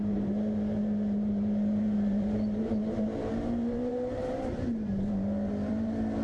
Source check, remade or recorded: remade